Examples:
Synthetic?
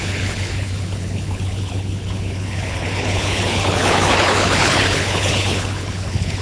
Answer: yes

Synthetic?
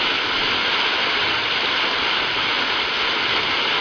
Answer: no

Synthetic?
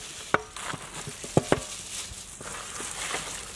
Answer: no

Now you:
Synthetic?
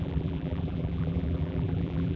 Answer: yes